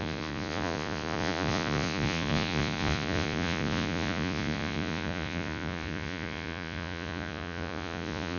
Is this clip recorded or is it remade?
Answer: remade